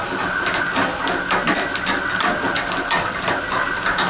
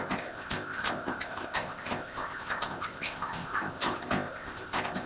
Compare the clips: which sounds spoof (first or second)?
second